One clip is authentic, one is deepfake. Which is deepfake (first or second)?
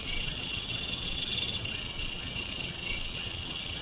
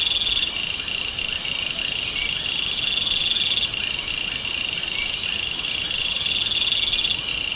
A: first